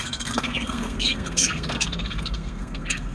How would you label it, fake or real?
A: fake